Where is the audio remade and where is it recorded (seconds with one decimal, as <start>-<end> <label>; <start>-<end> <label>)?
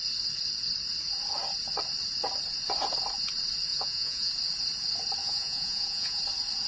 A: 0.0-3.7 recorded; 3.7-4.3 remade; 4.3-5.2 recorded; 5.2-6.2 remade; 6.2-6.7 recorded